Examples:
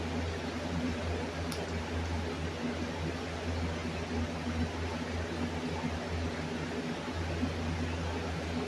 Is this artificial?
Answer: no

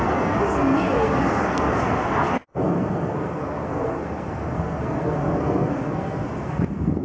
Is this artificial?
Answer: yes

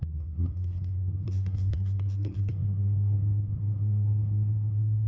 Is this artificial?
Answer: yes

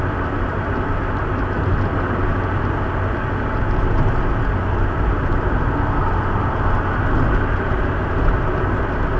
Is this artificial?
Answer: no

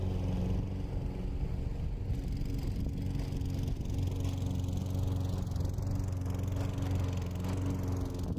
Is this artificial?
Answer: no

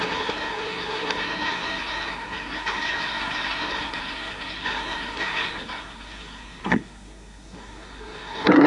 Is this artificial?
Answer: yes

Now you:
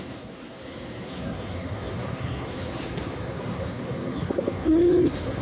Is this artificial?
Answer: yes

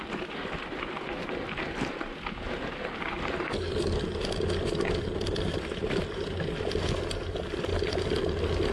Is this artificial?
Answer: no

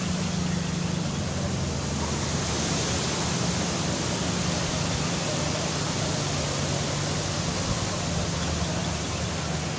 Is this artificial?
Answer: no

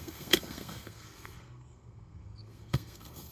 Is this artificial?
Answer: yes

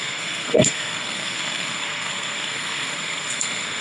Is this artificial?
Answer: yes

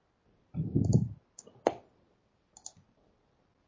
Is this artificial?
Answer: no